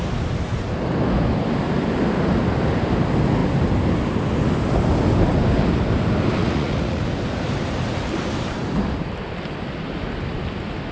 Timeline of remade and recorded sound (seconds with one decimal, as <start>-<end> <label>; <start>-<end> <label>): 0.0-6.4 recorded; 6.4-7.0 remade; 7.0-10.9 recorded